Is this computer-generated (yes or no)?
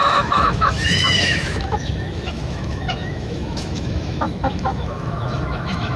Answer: yes